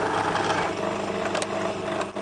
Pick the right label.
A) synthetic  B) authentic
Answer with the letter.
B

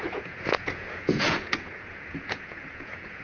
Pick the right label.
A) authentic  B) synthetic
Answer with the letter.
B